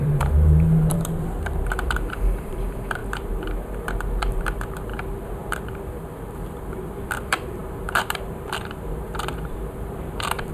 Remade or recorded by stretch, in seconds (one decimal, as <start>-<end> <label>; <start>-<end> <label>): 0.0-10.5 remade